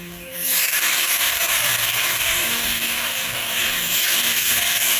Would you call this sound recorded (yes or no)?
no